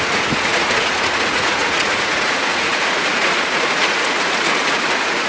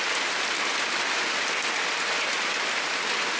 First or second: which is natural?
second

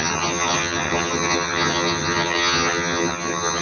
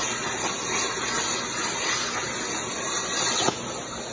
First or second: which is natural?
second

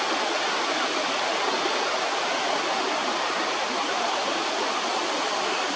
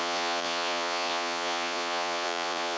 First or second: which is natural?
first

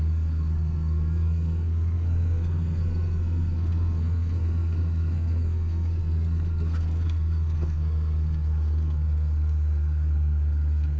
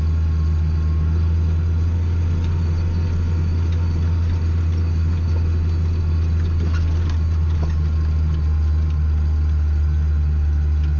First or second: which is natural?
second